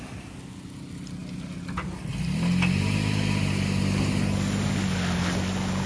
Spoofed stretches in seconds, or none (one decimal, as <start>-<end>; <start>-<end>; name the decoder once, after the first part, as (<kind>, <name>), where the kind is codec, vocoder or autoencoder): none